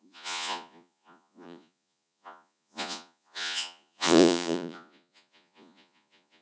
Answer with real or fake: fake